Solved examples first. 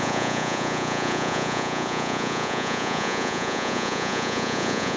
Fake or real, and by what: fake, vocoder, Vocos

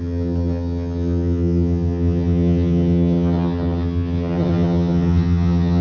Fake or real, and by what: fake, vocoder, HiFi-GAN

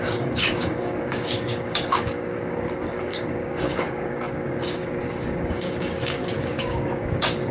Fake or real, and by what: fake, codec, DAC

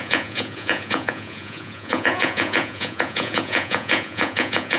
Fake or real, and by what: fake, vocoder, Vocos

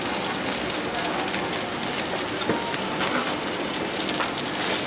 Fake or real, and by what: real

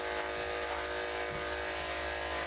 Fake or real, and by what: real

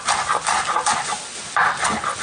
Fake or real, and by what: real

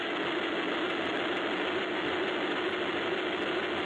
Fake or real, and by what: real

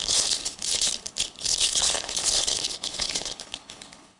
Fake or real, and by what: fake, codec, HILCodec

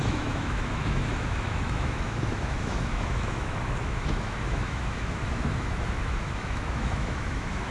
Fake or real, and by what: fake, autoencoder, DAC-VAE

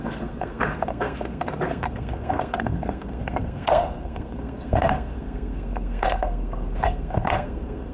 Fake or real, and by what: fake, codec, SNAC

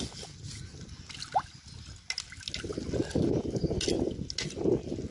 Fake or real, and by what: real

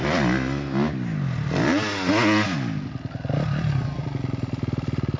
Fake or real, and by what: real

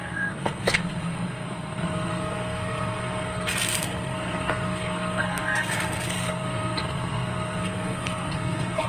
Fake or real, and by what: fake, codec, SNAC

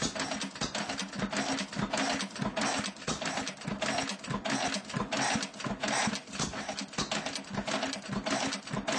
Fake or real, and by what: real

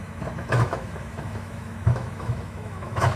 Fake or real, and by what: fake, autoencoder, DAC-VAE